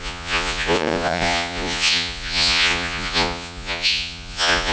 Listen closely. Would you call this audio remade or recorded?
remade